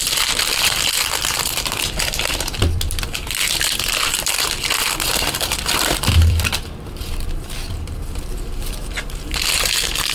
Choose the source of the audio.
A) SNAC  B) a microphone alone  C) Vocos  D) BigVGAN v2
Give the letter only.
D